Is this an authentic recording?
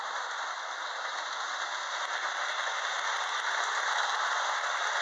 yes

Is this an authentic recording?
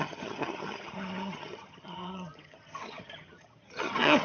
no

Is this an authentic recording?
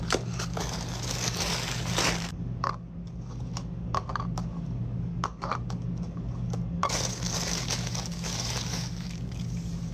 no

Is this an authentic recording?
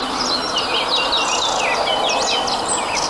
yes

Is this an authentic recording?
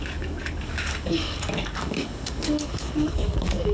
no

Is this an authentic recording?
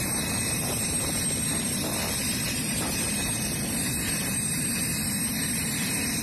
no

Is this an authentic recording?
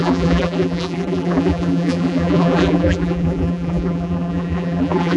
no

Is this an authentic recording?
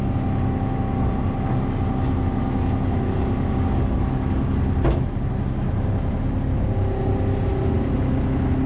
yes